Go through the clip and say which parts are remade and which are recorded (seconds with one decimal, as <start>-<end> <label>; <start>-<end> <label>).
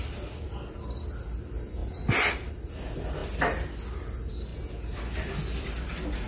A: 0.0-1.8 recorded; 1.8-2.5 remade; 2.5-6.3 recorded